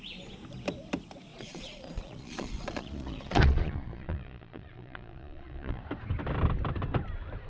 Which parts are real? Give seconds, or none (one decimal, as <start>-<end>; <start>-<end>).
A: 0.0-1.3; 5.8-7.5

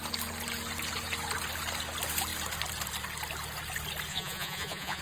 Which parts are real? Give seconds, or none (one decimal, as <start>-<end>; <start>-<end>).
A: 0.0-4.1

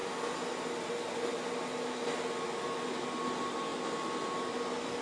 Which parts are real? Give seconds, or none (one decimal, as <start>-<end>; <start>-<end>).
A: 0.0-5.0

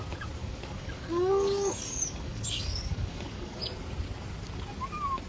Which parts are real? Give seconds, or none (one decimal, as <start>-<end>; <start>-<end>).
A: 0.0-0.4; 3.6-5.3

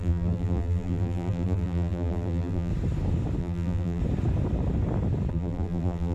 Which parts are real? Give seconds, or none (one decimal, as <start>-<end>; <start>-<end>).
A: 2.7-3.4; 4.0-5.3

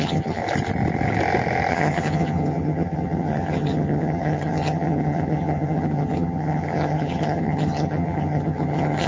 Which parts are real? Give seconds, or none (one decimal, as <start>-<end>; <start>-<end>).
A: 0.4-1.7

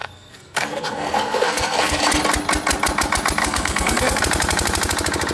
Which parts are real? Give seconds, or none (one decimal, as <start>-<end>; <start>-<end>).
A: 2.0-3.4; 4.2-5.3

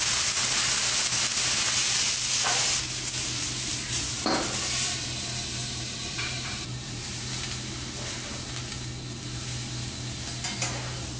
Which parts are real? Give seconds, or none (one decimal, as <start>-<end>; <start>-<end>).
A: 0.0-5.6; 7.3-11.2